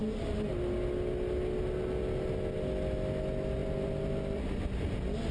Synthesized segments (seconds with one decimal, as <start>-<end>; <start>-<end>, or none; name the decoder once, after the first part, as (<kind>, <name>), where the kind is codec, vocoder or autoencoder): 3.6-4.4 (vocoder, BigVGAN v2)